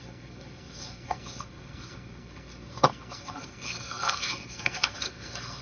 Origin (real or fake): fake